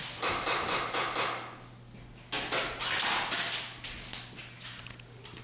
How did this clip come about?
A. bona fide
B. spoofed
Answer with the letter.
A